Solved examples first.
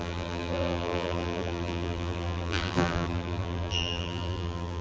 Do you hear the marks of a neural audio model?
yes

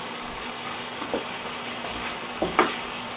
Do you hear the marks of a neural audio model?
yes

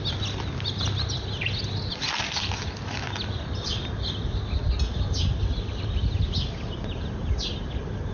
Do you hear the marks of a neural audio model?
no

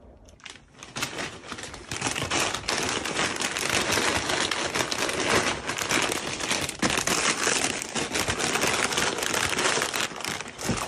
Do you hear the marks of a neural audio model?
no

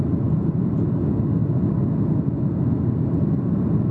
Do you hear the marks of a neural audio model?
no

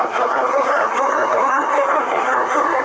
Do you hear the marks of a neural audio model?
yes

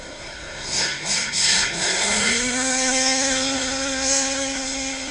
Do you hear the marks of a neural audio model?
yes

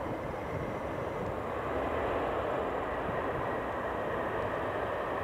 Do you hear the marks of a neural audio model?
no